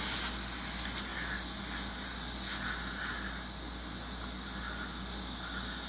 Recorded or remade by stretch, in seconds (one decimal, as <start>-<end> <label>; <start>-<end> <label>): 0.0-5.9 recorded